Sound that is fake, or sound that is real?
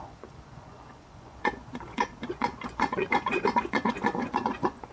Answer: fake